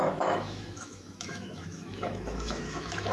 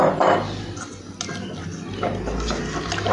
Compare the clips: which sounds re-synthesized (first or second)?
first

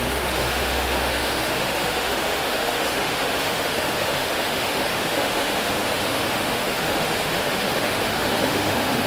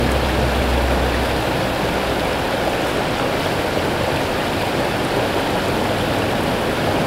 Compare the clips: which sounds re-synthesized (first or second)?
first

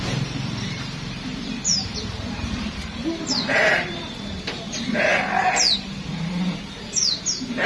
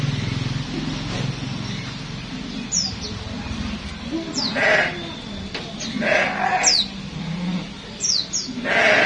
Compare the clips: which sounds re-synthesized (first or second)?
first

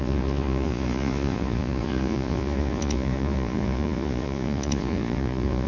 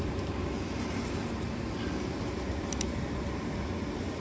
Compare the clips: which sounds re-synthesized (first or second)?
first